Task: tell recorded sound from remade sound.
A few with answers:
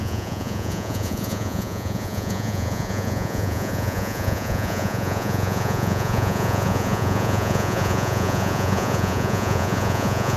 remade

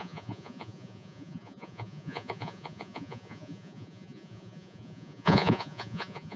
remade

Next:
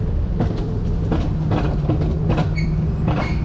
recorded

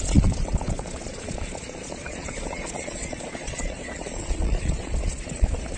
remade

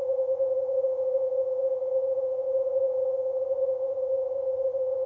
remade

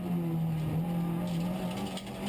recorded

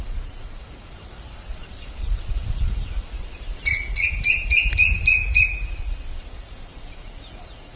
remade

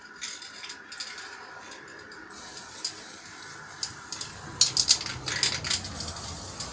recorded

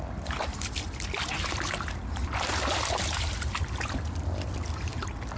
recorded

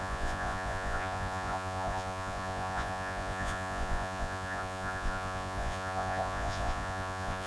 remade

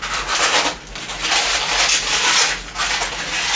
recorded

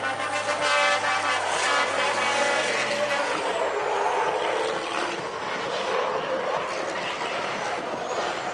recorded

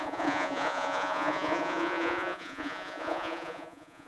remade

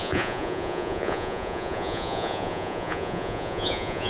remade